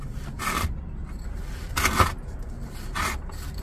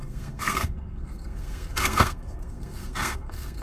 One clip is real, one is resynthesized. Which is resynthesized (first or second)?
second